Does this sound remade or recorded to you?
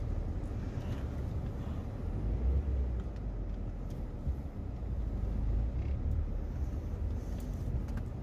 recorded